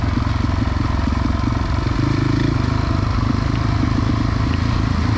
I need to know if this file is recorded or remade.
recorded